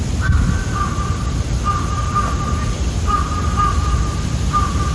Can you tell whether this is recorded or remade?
recorded